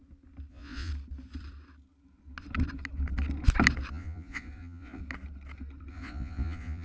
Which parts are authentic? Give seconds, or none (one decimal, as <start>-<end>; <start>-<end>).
0.0-0.5; 0.9-3.9; 5.0-5.9